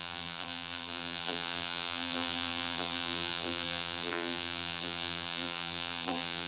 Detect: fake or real fake